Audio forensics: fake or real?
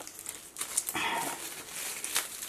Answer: real